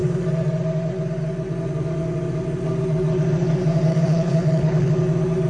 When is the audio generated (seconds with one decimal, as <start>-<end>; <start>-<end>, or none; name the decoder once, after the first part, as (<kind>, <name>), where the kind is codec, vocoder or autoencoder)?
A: 3.9-4.9 (codec, HILCodec)

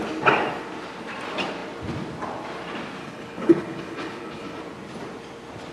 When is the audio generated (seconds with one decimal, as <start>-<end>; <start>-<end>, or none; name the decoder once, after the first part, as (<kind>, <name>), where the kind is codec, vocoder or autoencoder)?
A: 3.0-4.6 (codec, HILCodec)

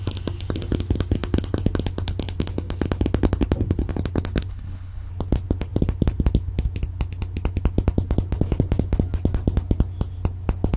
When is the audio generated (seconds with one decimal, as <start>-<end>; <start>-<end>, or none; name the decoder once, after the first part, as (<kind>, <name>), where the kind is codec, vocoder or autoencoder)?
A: 4.5-5.1 (codec, HILCodec)

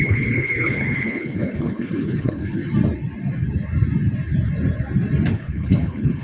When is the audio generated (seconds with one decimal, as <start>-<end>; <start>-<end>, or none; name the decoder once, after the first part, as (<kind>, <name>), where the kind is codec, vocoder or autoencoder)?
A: 0.0-2.6 (codec, HILCodec); 5.3-6.2